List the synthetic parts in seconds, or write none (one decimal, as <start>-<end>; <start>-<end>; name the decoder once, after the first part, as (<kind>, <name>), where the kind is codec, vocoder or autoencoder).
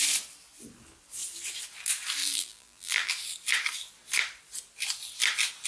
2.2-3.1 (vocoder, BigVGAN v2)